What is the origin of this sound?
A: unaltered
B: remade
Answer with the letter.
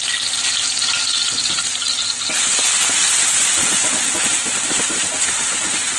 A